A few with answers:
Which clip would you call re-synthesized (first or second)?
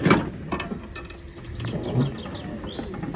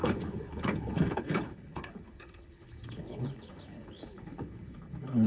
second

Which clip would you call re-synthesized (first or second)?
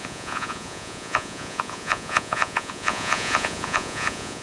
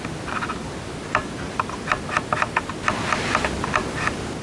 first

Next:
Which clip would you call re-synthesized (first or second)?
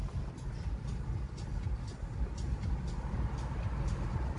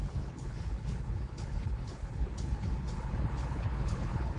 second